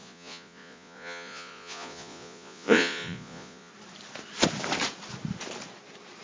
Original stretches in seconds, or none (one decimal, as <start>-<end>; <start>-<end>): 3.7-6.2